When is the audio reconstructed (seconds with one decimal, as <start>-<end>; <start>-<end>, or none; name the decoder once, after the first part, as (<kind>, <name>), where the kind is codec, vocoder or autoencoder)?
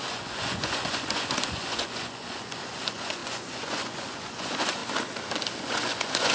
0.0-4.8 (vocoder, Vocos); 5.6-6.3